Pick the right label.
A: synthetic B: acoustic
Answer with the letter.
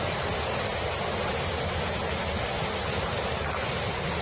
B